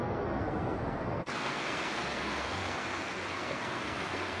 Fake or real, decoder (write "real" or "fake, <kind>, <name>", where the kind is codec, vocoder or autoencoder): fake, codec, SNAC